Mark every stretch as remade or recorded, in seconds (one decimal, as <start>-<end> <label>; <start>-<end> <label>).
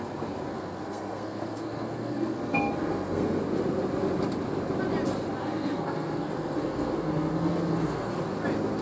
0.0-0.5 recorded; 0.5-3.4 remade; 3.4-5.4 recorded; 5.4-8.1 remade; 8.1-8.8 recorded